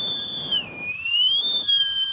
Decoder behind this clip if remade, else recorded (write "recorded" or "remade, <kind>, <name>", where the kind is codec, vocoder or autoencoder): remade, vocoder, BigVGAN v2